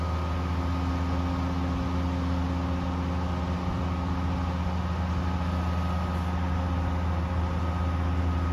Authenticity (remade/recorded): recorded